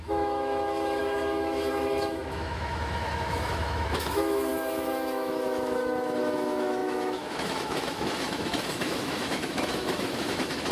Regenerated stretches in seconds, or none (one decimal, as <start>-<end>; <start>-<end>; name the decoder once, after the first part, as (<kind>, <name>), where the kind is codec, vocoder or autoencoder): 0.0-10.7 (autoencoder, DAC-VAE)